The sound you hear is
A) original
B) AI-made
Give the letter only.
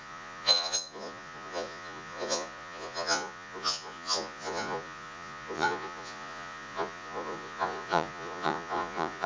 B